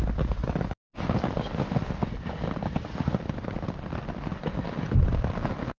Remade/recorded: recorded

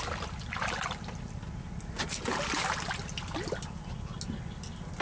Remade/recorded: recorded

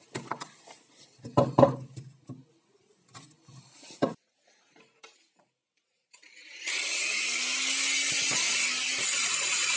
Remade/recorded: recorded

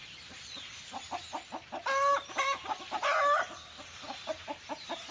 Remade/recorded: recorded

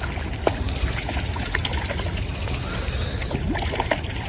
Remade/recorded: recorded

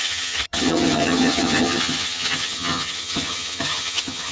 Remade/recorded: remade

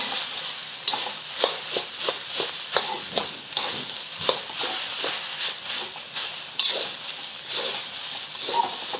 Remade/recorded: recorded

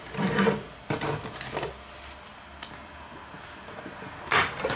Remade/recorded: recorded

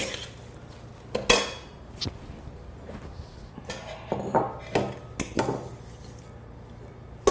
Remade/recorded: recorded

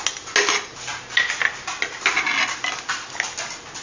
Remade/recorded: recorded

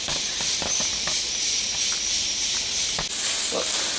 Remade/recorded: recorded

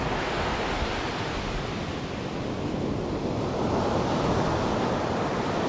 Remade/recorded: recorded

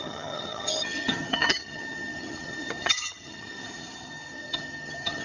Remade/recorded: remade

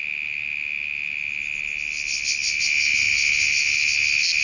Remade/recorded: recorded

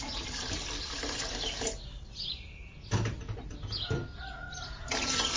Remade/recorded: recorded